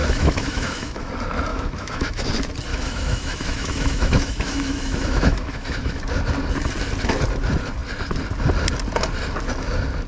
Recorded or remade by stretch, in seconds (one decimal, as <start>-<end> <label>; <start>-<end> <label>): 0.0-1.1 remade; 1.1-1.5 recorded; 1.5-2.3 remade; 2.3-2.7 recorded; 2.7-6.0 remade; 6.0-10.1 recorded